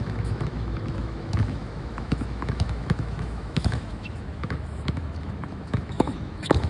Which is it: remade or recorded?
remade